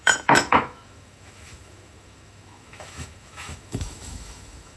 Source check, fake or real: fake